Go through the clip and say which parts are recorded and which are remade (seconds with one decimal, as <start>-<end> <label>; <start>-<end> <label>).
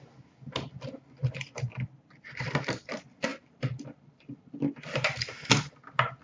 0.0-1.2 recorded; 1.2-2.5 remade; 2.5-3.3 recorded; 3.3-5.5 remade; 5.5-6.2 recorded